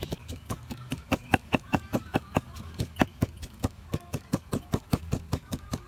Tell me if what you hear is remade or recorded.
remade